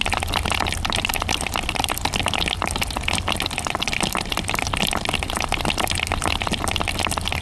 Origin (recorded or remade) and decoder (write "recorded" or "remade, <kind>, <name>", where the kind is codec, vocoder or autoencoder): recorded